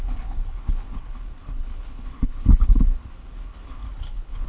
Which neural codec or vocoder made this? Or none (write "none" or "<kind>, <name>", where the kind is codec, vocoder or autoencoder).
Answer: codec, HILCodec